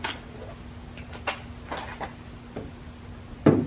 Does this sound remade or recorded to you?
recorded